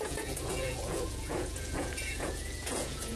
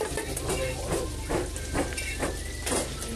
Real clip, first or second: second